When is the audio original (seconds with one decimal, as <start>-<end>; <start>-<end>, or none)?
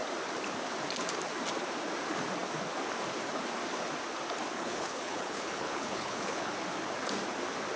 0.0-4.5; 6.5-7.8